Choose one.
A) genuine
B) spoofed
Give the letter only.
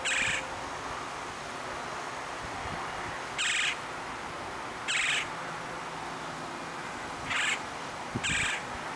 A